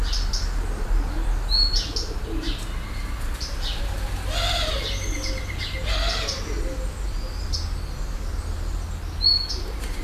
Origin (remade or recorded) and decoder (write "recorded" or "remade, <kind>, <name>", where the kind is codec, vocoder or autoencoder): recorded